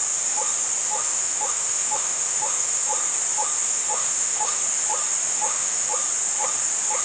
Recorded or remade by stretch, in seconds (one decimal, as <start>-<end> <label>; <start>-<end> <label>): 0.0-0.8 recorded; 0.8-2.9 remade; 2.9-3.6 recorded; 3.6-4.6 remade; 4.6-5.3 recorded; 5.3-5.9 remade; 5.9-7.0 recorded